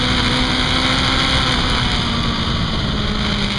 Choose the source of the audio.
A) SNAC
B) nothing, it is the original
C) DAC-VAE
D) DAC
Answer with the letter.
B